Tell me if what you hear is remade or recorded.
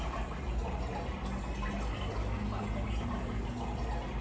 recorded